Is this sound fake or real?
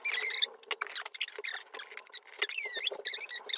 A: real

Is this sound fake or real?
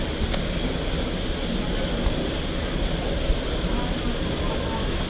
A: real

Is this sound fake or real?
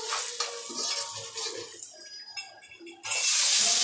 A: real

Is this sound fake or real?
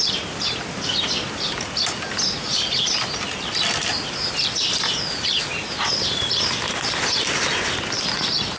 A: real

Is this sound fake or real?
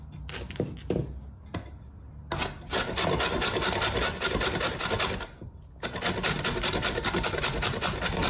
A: real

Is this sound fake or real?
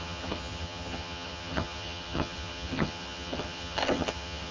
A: fake